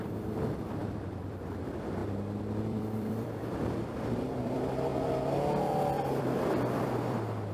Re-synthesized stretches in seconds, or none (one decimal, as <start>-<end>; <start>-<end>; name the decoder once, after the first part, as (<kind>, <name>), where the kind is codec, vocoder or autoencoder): 0.0-2.0 (vocoder, BigVGAN v2); 2.5-4.9; 6.2-7.5